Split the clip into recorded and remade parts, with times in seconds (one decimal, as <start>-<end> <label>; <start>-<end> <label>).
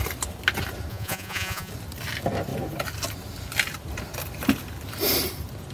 0.0-0.9 recorded; 0.9-1.7 remade; 1.7-5.7 recorded